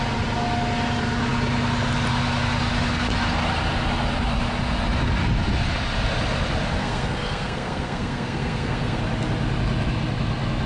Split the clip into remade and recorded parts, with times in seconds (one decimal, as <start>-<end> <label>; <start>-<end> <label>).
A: 0.0-6.8 recorded; 6.8-9.0 remade; 9.0-10.7 recorded